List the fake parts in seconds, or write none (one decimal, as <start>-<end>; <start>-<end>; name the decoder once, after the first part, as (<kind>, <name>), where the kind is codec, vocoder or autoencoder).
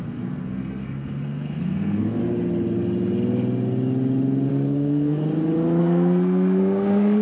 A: 0.0-2.2 (codec, SNAC); 4.5-5.2; 5.8-7.2